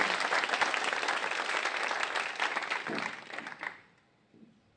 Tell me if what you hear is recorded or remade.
recorded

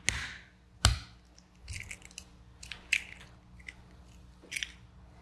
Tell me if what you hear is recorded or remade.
recorded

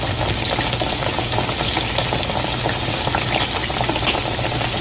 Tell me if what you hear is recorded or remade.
recorded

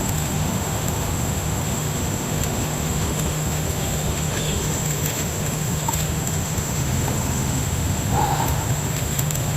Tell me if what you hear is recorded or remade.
remade